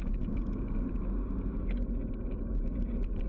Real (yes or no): yes